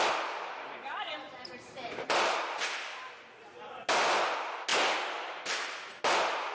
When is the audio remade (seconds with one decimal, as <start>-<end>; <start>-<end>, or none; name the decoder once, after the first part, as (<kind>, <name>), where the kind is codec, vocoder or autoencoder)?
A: 0.9-2.4 (vocoder, BigVGAN v2)